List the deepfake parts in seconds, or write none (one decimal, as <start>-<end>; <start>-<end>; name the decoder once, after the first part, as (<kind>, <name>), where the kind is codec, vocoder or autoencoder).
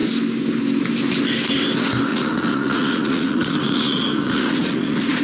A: 2.1-5.2 (vocoder, Vocos)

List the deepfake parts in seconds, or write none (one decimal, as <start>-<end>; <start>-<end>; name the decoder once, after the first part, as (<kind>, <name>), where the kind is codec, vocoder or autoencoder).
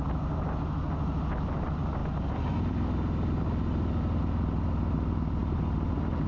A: none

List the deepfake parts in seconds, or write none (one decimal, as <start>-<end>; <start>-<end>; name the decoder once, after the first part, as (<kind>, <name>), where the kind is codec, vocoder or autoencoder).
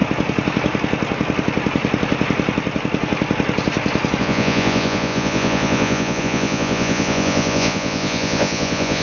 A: 4.2-9.0 (vocoder, Vocos)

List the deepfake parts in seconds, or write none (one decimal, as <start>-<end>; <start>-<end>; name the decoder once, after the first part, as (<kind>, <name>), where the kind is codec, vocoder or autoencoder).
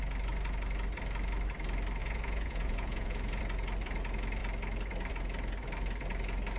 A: 2.0-3.4 (vocoder, Vocos)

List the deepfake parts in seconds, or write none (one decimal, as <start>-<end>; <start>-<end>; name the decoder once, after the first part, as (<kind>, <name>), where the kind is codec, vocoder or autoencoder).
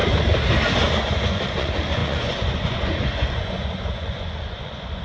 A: 1.0-5.0 (vocoder, Vocos)